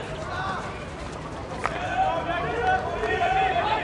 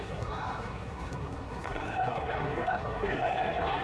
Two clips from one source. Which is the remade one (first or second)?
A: second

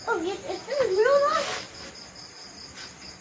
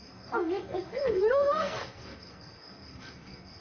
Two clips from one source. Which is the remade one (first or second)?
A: second